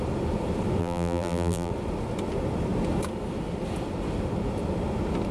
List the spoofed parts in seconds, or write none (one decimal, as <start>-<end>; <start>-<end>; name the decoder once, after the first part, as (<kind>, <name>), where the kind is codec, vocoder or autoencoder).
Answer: 0.8-1.7 (vocoder, BigVGAN v2)